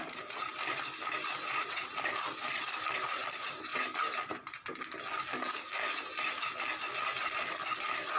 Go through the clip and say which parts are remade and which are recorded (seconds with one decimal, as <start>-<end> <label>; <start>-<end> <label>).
0.0-8.2 recorded